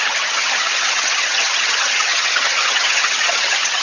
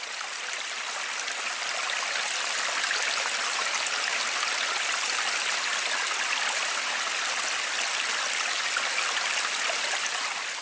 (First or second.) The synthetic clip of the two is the first